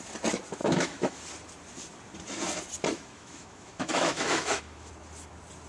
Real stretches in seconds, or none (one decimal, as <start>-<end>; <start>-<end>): 0.0-0.6; 1.2-2.9; 4.9-5.7